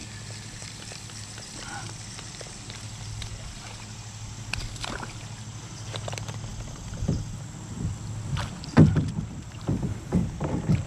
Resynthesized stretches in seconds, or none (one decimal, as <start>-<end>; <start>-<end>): none